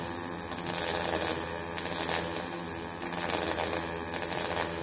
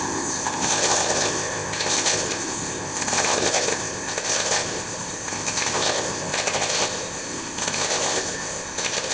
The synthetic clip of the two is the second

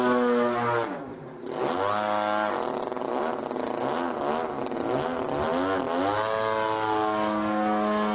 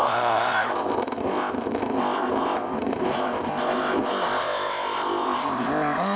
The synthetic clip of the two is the second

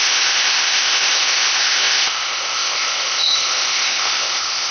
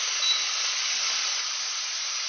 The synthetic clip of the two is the first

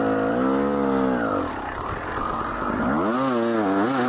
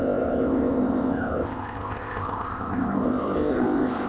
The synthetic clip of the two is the second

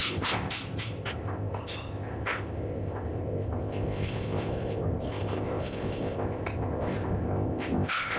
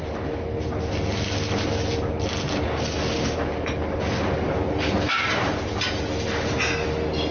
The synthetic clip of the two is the first